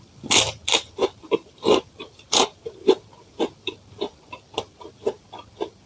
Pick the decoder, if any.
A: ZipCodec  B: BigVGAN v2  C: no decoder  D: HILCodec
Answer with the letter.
C